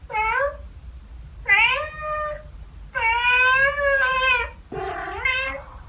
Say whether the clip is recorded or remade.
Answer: recorded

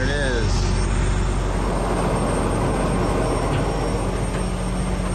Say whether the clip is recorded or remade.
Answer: recorded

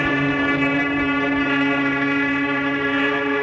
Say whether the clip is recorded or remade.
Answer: recorded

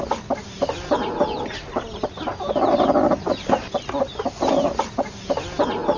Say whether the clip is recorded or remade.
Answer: recorded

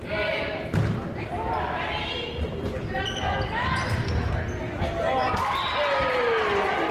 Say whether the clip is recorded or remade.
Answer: recorded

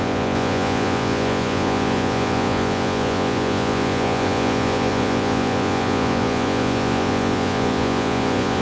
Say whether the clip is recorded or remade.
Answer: remade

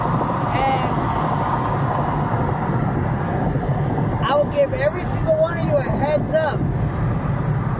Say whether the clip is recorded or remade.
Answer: recorded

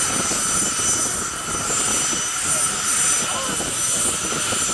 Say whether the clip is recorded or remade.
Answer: recorded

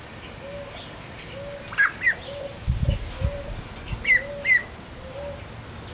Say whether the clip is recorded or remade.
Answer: recorded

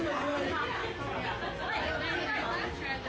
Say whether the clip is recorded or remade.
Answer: recorded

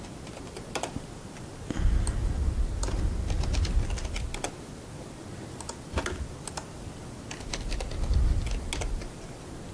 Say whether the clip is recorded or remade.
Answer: recorded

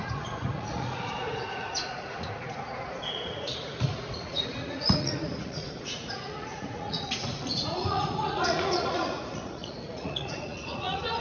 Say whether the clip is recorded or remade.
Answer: remade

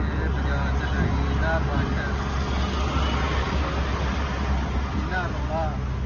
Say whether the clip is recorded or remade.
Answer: recorded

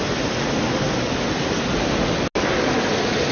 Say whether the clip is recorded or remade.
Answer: recorded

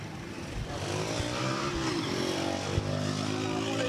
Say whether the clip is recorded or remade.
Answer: recorded